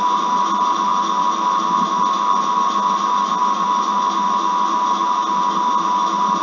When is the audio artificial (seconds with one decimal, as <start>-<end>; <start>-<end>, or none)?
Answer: none